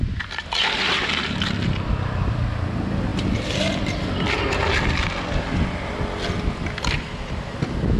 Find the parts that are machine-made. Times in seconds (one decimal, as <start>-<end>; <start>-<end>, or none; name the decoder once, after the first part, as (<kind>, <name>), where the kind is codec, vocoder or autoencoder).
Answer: none